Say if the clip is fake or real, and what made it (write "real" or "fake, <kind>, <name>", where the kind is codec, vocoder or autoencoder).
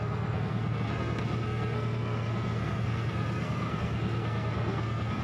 fake, codec, SNAC